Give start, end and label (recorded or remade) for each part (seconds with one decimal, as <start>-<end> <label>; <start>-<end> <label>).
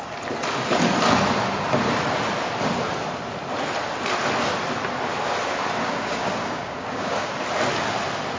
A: 0.0-5.8 recorded; 5.8-7.3 remade; 7.3-8.4 recorded